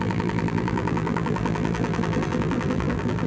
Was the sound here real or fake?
fake